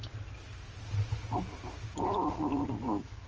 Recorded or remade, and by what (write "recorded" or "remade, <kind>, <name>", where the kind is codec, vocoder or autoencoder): recorded